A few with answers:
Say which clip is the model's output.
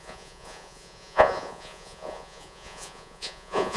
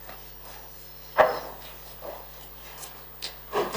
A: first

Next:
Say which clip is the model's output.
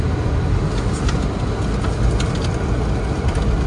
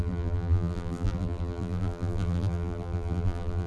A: second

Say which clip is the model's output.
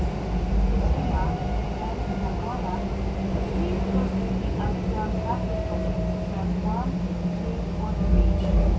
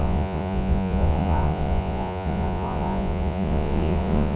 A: second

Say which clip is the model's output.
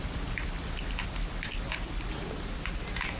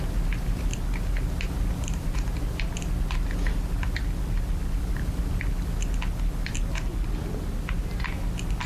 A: first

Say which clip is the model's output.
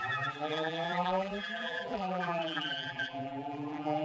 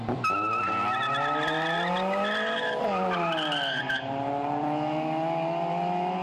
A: first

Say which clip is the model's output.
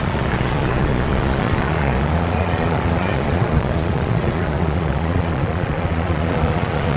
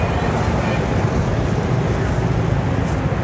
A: first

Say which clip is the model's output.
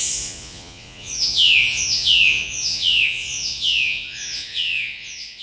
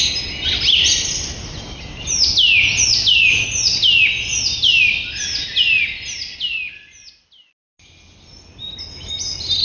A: first